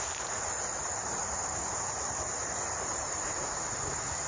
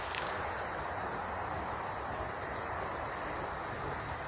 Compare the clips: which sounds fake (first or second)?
first